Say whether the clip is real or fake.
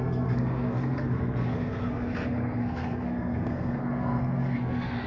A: fake